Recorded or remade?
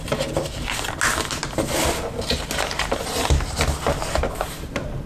recorded